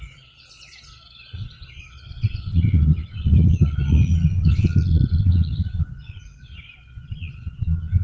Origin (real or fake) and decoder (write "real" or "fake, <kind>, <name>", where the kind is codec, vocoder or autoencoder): fake, vocoder, Vocos